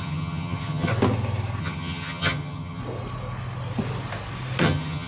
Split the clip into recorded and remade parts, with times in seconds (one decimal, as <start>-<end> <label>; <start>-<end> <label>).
0.0-0.9 remade; 0.9-1.6 recorded; 1.6-2.8 remade; 2.8-4.6 recorded; 4.6-5.1 remade